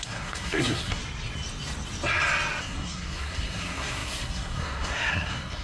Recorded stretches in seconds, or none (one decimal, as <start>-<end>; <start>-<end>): 1.0-2.6